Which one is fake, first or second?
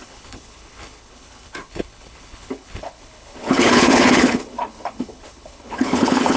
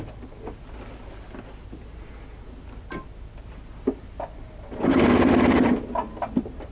first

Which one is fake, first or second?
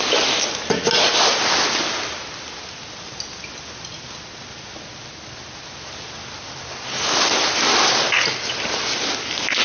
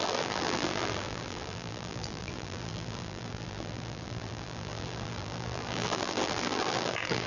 second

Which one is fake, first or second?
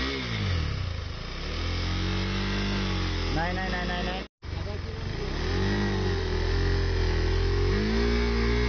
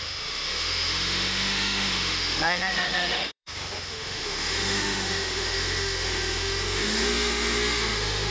second